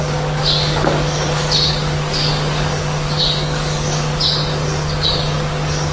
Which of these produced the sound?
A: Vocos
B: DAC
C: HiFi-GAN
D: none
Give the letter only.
B